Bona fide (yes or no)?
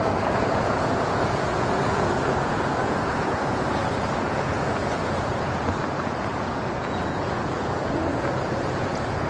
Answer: no